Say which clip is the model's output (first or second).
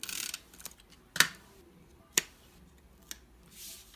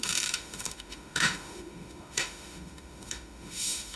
second